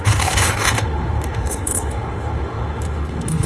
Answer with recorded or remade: remade